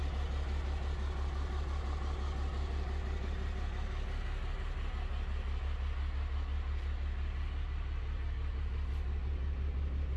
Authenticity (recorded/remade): recorded